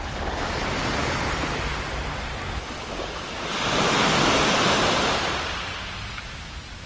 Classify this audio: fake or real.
real